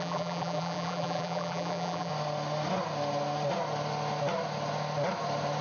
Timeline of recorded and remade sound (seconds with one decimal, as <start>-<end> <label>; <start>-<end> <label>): 0.0-2.1 remade; 2.1-5.6 recorded